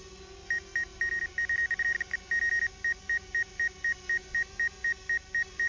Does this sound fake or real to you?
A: real